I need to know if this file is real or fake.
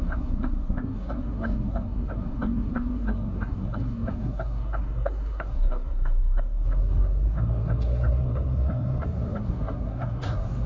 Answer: fake